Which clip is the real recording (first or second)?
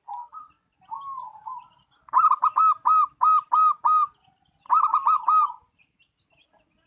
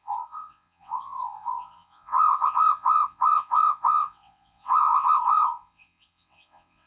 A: first